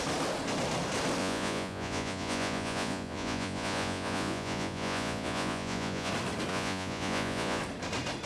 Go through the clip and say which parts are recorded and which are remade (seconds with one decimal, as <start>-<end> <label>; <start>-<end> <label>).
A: 0.0-1.2 recorded; 1.2-6.1 remade; 6.1-6.5 recorded; 6.5-7.6 remade; 7.6-8.3 recorded